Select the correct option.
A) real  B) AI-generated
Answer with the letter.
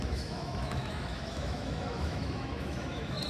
B